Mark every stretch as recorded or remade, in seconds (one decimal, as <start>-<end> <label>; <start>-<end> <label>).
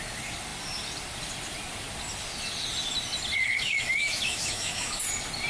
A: 0.0-3.4 recorded; 3.4-5.0 remade; 5.0-5.5 recorded